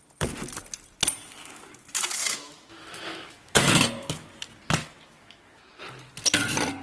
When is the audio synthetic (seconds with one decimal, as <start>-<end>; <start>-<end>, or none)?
2.2-3.7; 4.8-5.8

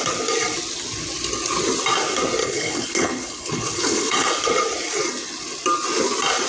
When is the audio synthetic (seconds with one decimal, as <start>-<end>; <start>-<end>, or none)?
2.4-4.3

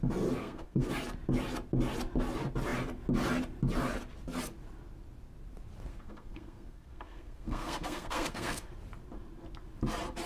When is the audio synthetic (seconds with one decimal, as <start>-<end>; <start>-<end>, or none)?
0.4-0.9; 5.9-8.7